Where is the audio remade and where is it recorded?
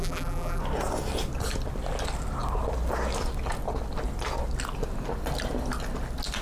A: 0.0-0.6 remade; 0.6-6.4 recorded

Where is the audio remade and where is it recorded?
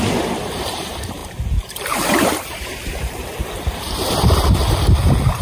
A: 0.0-5.4 remade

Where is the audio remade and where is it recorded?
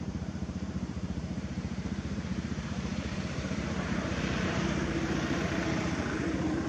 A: 0.0-6.7 remade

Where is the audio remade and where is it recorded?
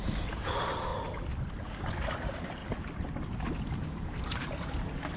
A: 0.0-0.9 remade; 0.9-1.5 recorded; 1.5-2.6 remade; 2.6-3.7 recorded; 3.7-5.2 remade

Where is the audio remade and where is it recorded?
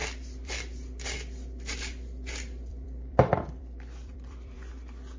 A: 0.0-0.5 remade; 0.5-2.7 recorded; 2.7-4.7 remade; 4.7-5.2 recorded